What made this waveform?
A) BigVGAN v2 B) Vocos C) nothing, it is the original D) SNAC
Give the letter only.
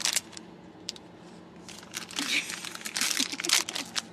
C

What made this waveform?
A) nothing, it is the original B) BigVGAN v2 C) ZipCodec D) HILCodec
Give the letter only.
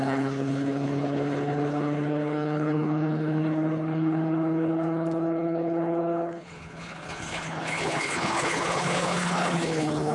D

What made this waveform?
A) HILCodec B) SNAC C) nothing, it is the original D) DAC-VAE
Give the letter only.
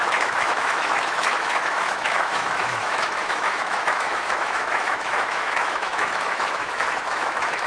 D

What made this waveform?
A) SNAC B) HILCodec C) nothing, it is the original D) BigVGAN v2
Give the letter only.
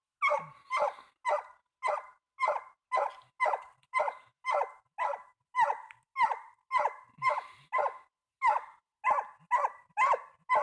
C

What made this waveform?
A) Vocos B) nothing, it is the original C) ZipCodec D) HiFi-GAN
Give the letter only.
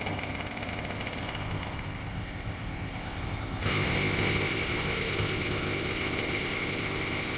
C